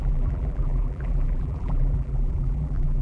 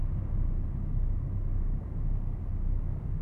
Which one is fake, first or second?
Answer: first